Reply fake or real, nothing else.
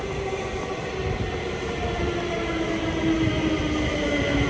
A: real